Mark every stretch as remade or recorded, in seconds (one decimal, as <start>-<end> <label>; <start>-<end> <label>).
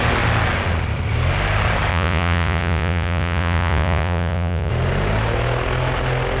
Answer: 0.0-1.9 recorded; 1.9-4.7 remade; 4.7-6.4 recorded